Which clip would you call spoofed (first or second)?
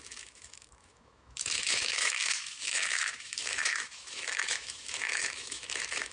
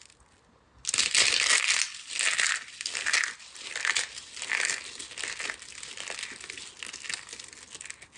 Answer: first